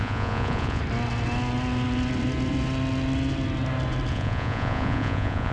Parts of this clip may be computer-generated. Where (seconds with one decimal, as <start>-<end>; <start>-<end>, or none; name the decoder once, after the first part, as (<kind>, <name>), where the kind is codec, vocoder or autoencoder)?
0.0-0.8 (vocoder, Vocos); 4.1-5.5